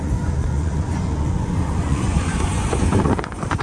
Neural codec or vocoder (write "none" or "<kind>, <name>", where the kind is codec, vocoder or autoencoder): vocoder, Vocos